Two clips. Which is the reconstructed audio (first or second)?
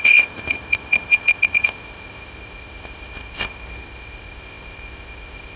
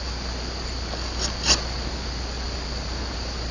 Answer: first